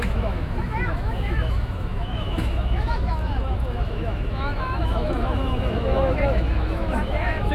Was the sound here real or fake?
fake